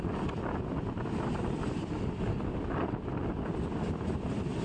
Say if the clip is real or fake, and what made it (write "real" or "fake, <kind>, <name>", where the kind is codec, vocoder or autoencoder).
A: real